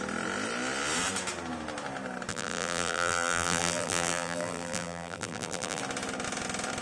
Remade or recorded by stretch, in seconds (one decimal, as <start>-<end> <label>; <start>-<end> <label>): 0.0-2.3 recorded; 2.3-5.8 remade; 5.8-6.8 recorded